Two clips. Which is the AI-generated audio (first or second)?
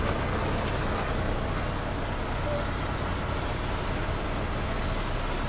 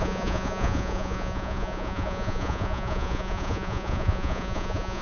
second